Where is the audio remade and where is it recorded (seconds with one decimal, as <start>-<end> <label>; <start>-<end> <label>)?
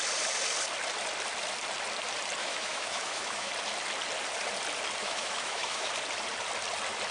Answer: 0.0-2.4 recorded; 2.4-3.5 remade; 3.5-5.0 recorded; 5.0-5.9 remade; 5.9-7.1 recorded